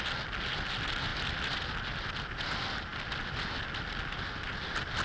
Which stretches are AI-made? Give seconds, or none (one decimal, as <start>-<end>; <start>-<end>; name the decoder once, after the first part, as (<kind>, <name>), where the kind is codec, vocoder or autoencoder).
none